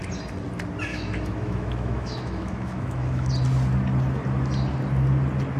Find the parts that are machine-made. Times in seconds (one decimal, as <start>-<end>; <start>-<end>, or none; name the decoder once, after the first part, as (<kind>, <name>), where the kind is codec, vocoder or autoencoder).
0.9-3.3 (autoencoder, DAC-VAE)